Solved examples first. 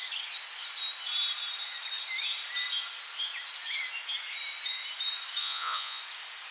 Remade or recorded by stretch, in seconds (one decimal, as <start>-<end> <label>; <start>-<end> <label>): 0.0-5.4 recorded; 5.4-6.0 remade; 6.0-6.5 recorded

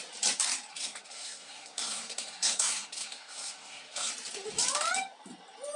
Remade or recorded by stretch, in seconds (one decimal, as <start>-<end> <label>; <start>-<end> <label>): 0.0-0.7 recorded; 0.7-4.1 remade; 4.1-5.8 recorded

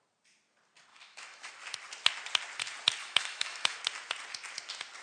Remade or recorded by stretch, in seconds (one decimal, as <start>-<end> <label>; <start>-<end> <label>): 0.0-0.9 recorded; 0.9-1.5 remade; 1.5-3.0 recorded; 3.0-3.8 remade; 3.8-5.0 recorded